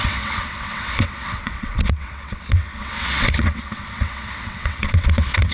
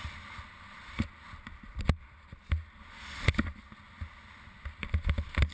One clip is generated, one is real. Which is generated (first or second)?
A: first